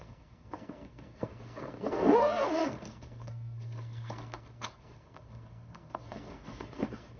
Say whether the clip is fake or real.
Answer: fake